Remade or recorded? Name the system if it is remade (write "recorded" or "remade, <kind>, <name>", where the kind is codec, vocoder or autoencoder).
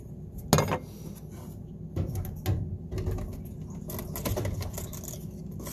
recorded